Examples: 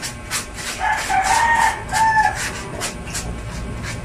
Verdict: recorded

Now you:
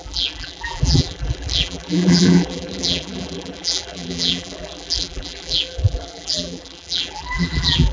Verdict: remade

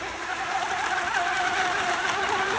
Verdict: remade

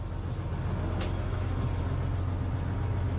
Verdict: recorded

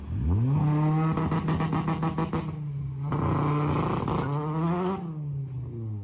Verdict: recorded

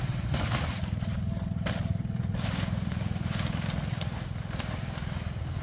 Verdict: recorded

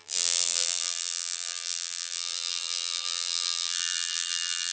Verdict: remade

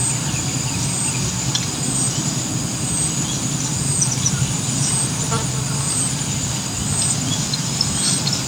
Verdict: recorded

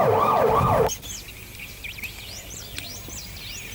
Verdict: recorded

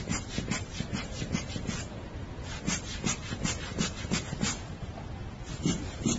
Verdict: recorded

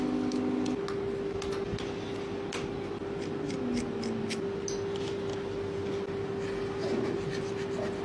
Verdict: recorded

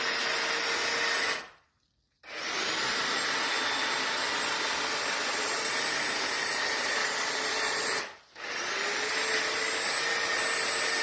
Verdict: recorded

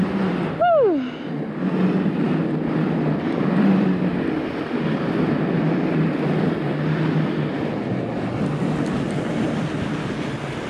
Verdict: recorded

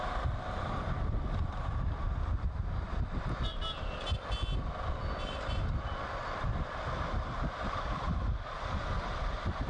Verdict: recorded